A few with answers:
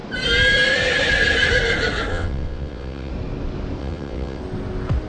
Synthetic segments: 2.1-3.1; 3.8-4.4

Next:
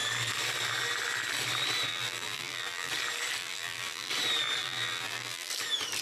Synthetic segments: 1.9-2.9; 3.4-4.1; 4.6-5.5

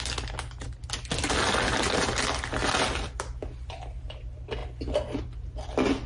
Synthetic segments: none

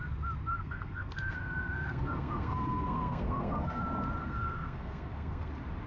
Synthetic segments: 0.5-3.8; 4.2-5.5

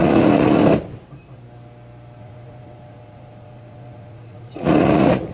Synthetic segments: 0.0-0.6; 2.2-5.3

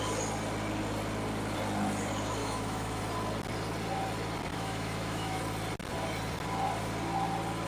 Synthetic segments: 2.4-3.0; 4.5-5.4

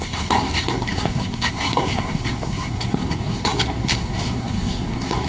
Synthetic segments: 0.0-5.3

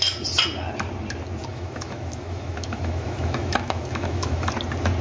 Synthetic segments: 1.5-4.5